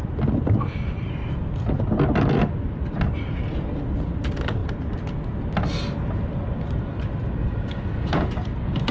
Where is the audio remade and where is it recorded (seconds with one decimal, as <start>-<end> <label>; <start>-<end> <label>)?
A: 0.0-8.9 recorded